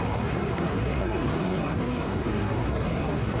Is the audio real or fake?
fake